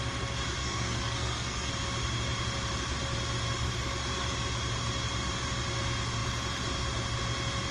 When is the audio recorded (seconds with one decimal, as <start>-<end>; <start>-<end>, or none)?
0.0-0.6; 1.7-7.7